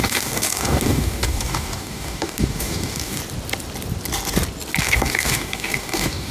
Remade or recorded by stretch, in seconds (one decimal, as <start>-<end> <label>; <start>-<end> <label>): 0.0-3.2 remade; 3.2-4.8 recorded; 4.8-6.3 remade